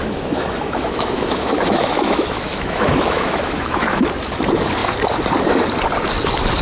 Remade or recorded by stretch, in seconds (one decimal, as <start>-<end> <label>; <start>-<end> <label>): 0.0-4.0 remade; 4.0-6.6 recorded

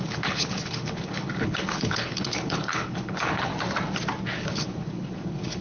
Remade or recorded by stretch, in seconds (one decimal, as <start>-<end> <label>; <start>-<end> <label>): 0.0-3.5 remade; 3.5-4.3 recorded; 4.3-5.6 remade

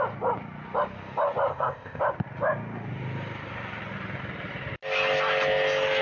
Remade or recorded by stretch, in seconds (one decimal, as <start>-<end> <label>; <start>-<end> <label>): 0.0-1.5 recorded; 1.5-2.0 remade; 2.0-6.0 recorded

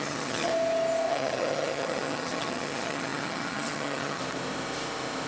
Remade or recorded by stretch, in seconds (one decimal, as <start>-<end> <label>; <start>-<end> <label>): 0.0-0.5 remade; 0.5-1.1 recorded; 1.1-4.2 remade; 4.2-5.3 recorded